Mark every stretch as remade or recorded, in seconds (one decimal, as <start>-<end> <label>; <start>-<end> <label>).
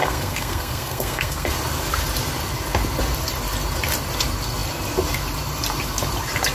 0.0-1.5 remade; 1.5-6.5 recorded